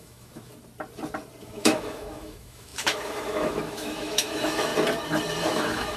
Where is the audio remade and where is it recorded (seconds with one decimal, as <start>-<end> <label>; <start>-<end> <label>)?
0.0-0.5 remade; 0.5-1.4 recorded; 1.4-4.7 remade; 4.7-5.4 recorded; 5.4-6.0 remade